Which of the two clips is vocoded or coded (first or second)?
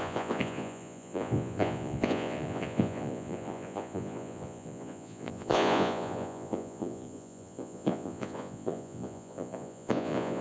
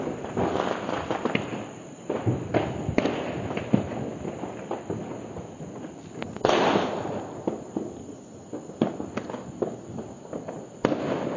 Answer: first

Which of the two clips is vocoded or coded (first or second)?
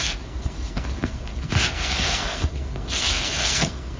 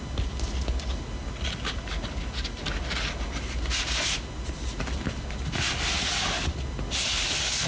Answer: first